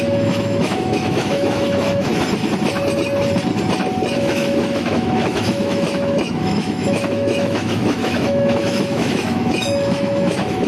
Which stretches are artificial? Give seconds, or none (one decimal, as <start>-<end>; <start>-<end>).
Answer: 0.0-2.1; 4.1-10.7